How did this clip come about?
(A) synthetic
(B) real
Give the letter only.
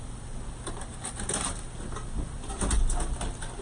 B